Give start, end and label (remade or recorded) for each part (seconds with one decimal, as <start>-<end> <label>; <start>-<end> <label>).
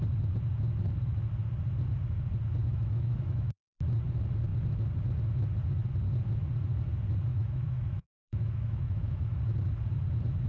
0.0-2.7 recorded; 2.7-3.5 remade; 3.5-7.3 recorded; 7.3-9.4 remade; 9.4-10.5 recorded